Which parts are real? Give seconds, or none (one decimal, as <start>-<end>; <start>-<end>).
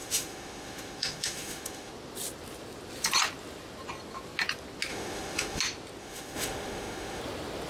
1.9-4.9; 5.6-6.0; 7.2-7.7